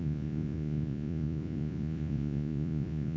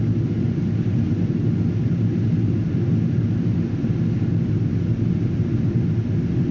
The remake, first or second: first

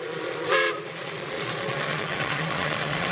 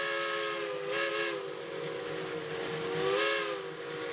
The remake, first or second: first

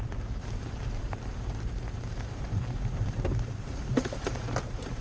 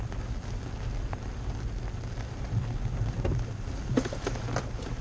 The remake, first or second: first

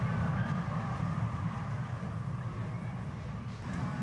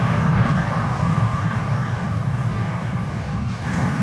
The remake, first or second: second